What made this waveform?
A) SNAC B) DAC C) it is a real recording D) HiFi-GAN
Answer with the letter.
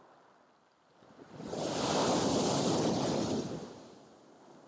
C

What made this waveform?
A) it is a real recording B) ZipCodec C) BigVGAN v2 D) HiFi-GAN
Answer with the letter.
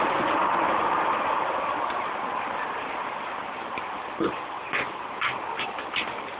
A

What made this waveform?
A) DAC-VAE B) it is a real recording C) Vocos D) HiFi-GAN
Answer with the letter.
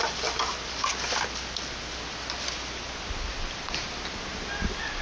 B